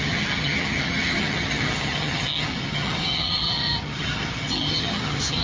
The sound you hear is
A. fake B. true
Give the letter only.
A